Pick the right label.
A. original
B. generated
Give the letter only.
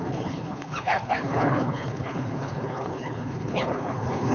B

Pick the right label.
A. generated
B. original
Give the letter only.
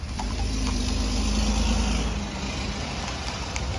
B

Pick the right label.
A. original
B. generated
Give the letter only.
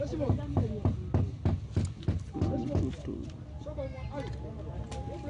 A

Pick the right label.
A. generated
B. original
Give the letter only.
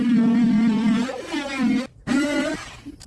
B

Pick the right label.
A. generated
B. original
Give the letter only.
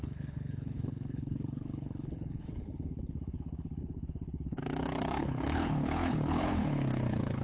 A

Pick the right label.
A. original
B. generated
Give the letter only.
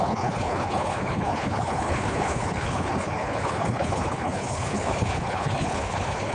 B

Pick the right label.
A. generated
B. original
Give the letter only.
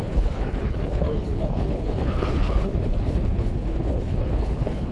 A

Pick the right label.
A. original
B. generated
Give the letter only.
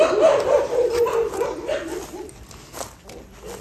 A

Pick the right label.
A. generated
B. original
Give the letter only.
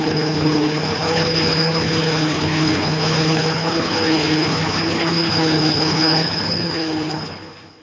A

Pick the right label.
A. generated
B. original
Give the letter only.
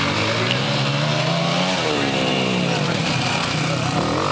B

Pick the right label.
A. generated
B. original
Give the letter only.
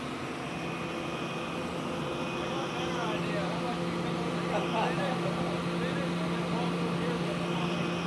B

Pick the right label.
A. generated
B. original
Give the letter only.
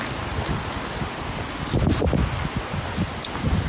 B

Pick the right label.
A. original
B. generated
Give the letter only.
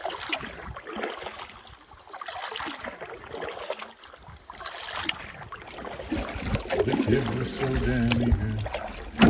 A